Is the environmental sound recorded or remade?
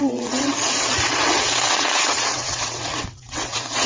remade